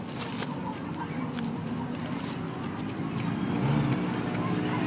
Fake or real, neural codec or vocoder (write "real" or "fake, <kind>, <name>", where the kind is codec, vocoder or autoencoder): real